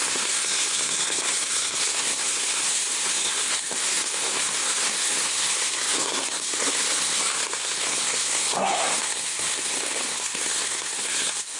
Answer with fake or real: fake